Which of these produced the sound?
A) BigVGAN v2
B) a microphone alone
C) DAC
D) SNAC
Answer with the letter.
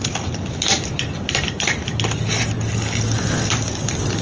B